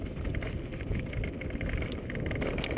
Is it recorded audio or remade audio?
recorded